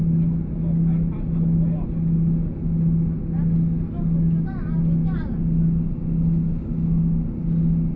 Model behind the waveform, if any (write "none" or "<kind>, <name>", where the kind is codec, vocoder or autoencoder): none